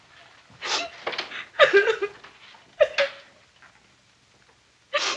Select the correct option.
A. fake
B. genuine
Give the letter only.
B